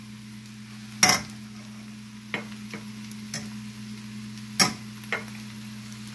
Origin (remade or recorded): recorded